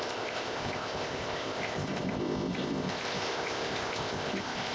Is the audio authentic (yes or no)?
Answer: no